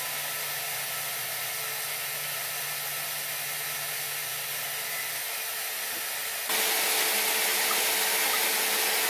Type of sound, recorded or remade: recorded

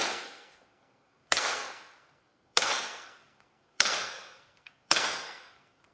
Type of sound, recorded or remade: remade